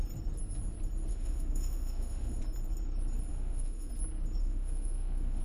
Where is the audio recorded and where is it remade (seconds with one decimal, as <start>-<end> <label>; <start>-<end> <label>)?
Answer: 0.0-1.1 recorded; 1.1-2.4 remade; 2.4-3.3 recorded; 3.3-3.9 remade; 3.9-4.4 recorded; 4.4-5.4 remade